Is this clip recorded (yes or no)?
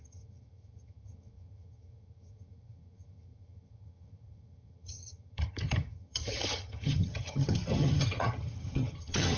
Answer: no